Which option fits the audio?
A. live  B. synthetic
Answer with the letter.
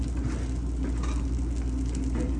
A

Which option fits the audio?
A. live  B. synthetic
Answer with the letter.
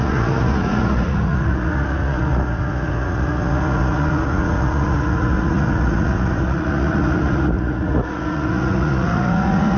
B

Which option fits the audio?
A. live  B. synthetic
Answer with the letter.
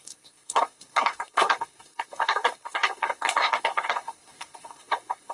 B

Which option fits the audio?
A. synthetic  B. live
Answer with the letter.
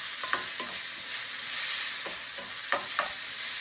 B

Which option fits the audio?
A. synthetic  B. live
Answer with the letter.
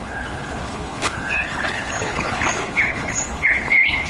A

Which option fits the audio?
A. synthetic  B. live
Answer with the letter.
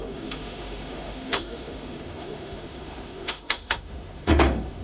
A